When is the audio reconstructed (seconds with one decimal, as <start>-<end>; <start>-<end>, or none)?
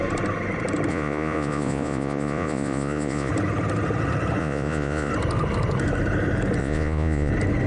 0.9-3.3; 4.4-5.1; 6.6-7.3